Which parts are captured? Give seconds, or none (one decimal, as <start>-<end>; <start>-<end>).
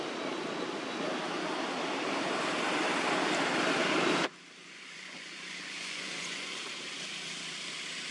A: 0.0-4.6; 6.6-8.1